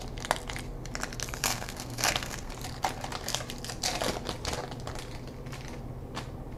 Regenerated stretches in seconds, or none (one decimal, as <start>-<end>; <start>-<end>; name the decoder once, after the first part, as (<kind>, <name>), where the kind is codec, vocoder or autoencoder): 1.4-2.5 (codec, SNAC)